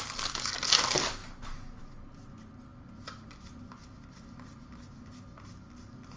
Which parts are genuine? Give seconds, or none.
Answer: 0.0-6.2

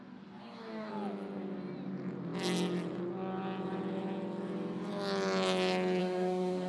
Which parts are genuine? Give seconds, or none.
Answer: 0.0-0.4; 0.9-6.0

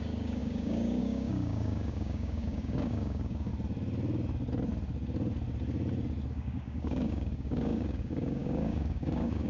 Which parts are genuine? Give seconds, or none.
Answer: 3.5-6.3

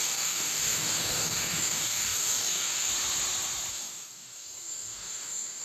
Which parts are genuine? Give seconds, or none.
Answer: 2.9-3.7